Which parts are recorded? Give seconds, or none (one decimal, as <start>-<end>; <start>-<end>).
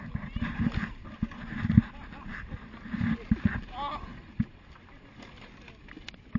0.0-6.4